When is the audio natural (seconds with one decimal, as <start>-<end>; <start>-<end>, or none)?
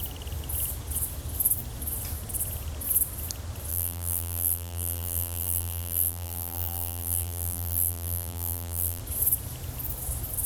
0.0-3.7; 9.0-10.5